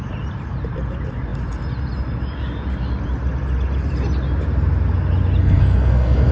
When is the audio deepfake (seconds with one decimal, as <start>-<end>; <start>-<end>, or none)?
5.4-6.3